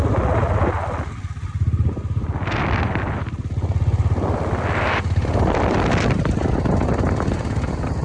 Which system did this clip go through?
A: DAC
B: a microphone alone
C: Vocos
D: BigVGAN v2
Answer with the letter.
B